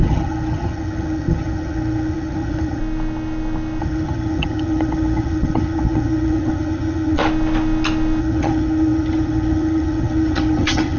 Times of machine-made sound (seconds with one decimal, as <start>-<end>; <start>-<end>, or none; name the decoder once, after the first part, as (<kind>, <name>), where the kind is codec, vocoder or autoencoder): 0.0-2.8 (vocoder, HiFi-GAN); 3.8-7.2; 8.2-11.0